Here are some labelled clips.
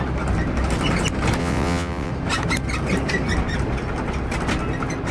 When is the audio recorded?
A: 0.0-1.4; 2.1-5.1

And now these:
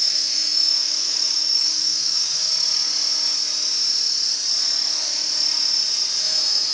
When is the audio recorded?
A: 2.5-6.2

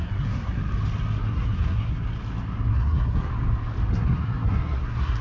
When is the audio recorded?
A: 0.6-1.2; 2.0-2.7; 3.3-3.9